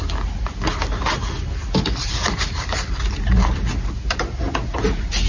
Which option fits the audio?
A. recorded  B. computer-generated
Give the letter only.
A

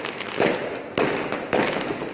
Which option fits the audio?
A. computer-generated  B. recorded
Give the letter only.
B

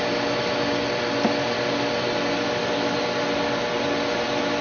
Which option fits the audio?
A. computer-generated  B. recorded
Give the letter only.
B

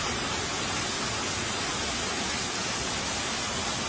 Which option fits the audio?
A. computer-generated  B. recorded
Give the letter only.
B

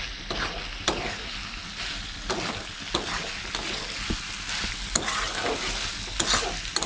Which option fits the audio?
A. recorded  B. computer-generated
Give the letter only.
A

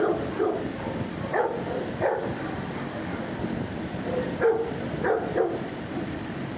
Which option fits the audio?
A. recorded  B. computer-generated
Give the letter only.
A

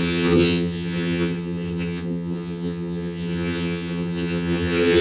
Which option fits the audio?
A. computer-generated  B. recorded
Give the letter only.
A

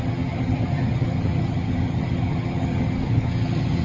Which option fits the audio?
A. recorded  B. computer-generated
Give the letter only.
B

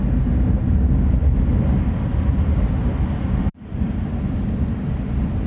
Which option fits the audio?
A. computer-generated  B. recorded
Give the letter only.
B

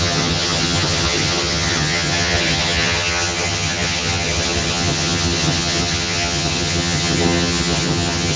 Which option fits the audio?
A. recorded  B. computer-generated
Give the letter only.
B